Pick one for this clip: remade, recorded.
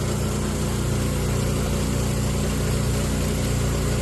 recorded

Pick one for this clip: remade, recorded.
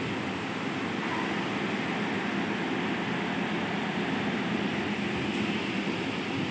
recorded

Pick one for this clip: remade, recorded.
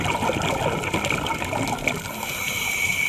recorded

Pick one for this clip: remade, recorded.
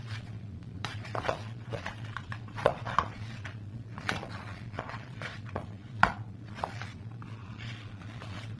remade